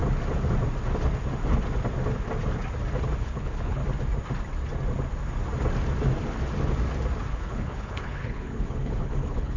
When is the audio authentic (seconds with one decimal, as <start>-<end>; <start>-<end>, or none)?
0.0-3.2; 3.8-7.3